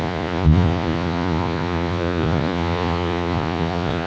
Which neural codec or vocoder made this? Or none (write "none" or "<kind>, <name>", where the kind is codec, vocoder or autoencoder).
vocoder, Vocos